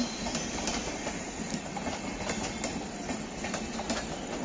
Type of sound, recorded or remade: recorded